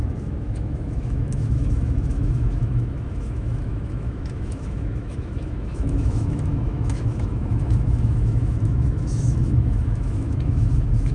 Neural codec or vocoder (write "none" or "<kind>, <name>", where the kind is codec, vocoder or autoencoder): autoencoder, DAC-VAE